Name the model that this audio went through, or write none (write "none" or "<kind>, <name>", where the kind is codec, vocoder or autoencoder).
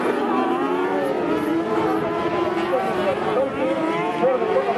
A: none